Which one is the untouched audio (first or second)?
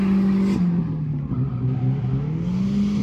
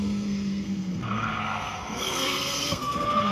first